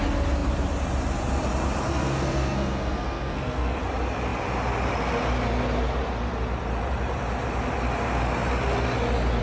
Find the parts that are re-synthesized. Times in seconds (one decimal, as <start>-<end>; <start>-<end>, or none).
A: 1.9-3.8